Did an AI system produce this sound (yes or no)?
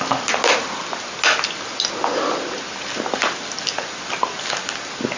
no